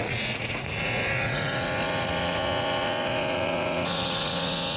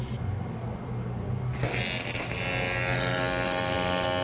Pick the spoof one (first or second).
first